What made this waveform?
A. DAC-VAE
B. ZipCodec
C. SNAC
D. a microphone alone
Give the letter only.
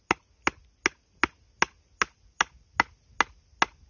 D